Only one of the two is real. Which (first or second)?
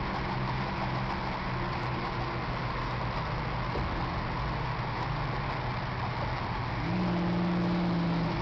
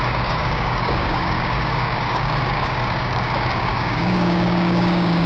first